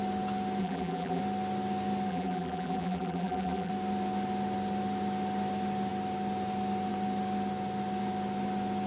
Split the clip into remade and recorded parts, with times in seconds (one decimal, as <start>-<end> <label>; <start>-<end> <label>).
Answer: 0.0-0.6 recorded; 0.6-1.2 remade; 1.2-2.1 recorded; 2.1-3.7 remade; 3.7-8.9 recorded